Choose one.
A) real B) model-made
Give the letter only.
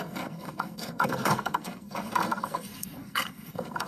B